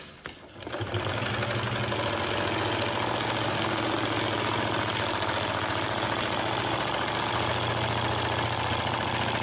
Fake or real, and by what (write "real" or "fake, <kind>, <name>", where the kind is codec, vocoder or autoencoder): real